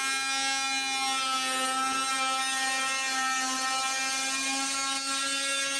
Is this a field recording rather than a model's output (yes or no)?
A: yes